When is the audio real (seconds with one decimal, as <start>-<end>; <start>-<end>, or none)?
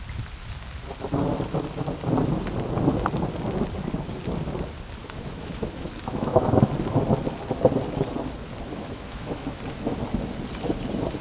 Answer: 0.0-5.0; 6.7-8.7; 9.6-11.2